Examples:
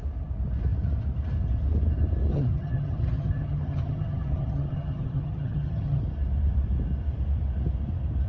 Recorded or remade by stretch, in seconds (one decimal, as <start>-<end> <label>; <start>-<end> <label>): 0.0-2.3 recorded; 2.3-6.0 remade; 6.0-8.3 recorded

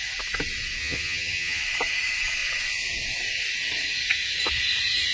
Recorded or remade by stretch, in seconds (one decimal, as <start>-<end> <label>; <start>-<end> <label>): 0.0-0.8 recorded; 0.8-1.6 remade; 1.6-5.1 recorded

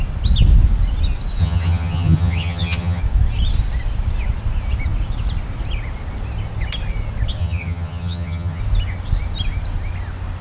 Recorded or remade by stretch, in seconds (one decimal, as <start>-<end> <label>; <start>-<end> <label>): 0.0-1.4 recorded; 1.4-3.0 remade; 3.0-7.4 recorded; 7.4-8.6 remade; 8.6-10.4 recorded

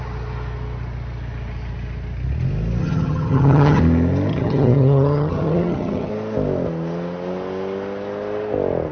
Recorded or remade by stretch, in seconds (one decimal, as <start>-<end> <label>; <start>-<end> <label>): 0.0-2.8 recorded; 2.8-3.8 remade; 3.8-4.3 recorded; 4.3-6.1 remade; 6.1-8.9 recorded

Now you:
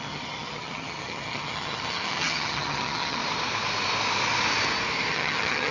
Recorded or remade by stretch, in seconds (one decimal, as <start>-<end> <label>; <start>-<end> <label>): 0.0-3.2 remade; 3.2-5.1 recorded; 5.1-5.7 remade

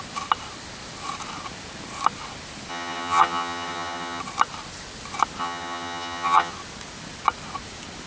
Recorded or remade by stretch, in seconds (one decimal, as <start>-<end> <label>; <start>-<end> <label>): 0.0-2.7 recorded; 2.7-4.2 remade; 4.2-5.4 recorded; 5.4-6.5 remade; 6.5-8.1 recorded

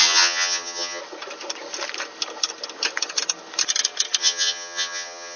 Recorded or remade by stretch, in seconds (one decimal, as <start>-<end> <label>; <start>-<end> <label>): 0.0-1.0 remade; 1.0-4.2 recorded; 4.2-5.4 remade

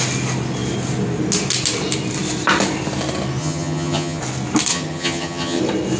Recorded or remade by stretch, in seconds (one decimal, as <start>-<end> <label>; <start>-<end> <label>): 0.0-3.4 recorded; 3.4-4.2 remade; 4.2-4.7 recorded; 4.7-5.6 remade; 5.6-6.0 recorded